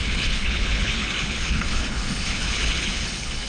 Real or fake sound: fake